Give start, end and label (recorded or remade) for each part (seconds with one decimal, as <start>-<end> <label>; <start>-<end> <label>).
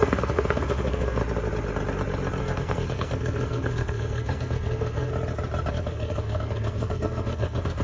0.0-1.2 remade; 1.2-2.4 recorded; 2.4-5.1 remade; 5.1-5.7 recorded; 5.7-7.8 remade